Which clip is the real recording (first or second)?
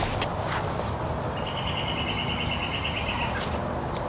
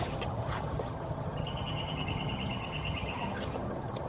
first